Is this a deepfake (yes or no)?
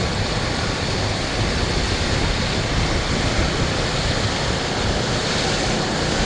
no